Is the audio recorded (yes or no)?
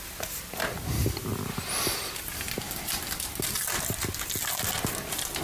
yes